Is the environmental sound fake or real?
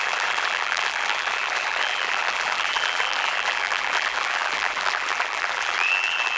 fake